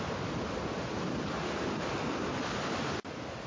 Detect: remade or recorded recorded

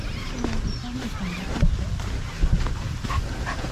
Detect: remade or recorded recorded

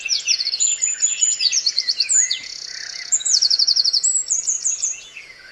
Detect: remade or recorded remade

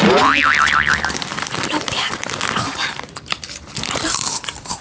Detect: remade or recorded remade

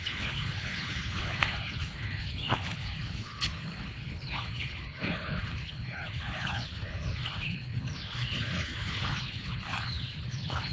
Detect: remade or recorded remade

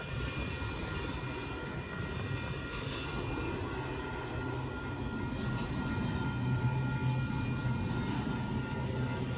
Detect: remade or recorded recorded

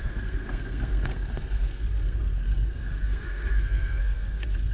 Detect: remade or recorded remade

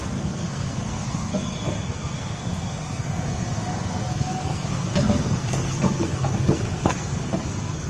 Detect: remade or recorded remade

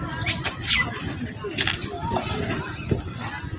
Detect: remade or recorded recorded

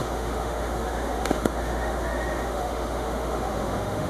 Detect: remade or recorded remade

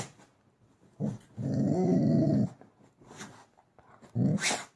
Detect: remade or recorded recorded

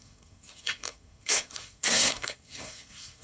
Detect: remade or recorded remade